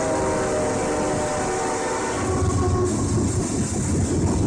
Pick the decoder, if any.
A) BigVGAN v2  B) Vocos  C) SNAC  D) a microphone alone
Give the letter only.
D